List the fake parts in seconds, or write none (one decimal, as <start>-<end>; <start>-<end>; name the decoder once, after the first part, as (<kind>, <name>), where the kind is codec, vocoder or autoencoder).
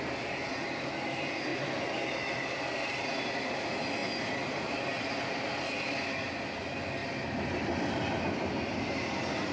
none